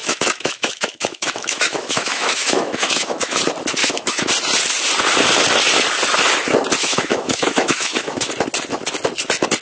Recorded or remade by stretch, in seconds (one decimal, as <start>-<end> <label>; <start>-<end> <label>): 0.0-3.4 remade; 3.4-3.8 recorded; 3.8-4.3 remade; 4.3-6.8 recorded; 6.8-8.3 remade; 8.3-9.6 recorded